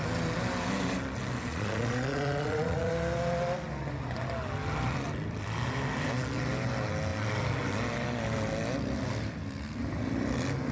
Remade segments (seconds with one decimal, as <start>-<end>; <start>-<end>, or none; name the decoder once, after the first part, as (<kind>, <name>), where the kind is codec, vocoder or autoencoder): 1.5-2.9 (vocoder, Vocos)